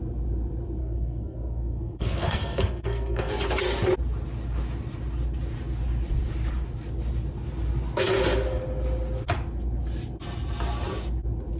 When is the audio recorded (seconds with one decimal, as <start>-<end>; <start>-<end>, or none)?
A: 0.0-0.8; 3.3-11.6